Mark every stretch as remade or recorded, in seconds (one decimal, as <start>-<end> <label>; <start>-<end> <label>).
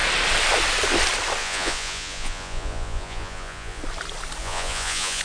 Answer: 0.0-1.4 recorded; 1.4-3.8 remade; 3.8-4.4 recorded; 4.4-5.2 remade